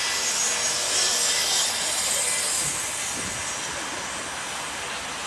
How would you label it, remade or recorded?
recorded